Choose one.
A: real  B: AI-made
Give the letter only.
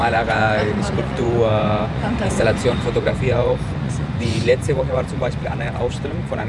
B